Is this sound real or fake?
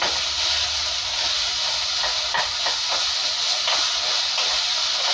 real